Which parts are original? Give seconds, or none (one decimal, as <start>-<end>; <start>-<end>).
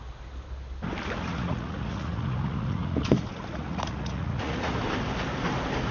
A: 0.0-1.3; 4.8-5.9